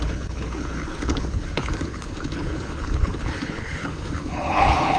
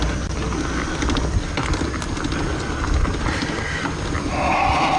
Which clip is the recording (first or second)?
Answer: second